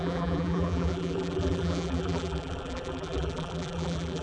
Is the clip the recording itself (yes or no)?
no